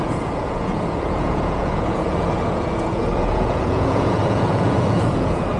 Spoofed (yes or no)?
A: yes